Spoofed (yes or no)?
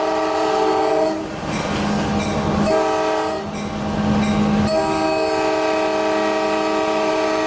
no